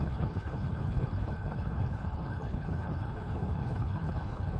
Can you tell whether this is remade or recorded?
remade